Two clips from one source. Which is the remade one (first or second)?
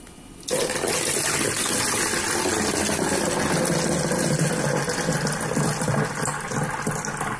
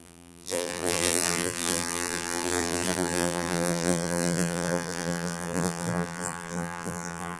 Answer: second